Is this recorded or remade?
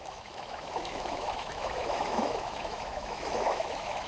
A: remade